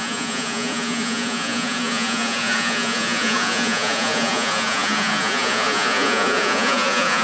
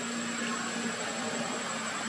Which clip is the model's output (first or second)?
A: first